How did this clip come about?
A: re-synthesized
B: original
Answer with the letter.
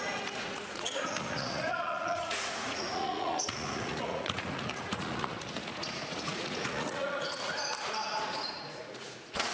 A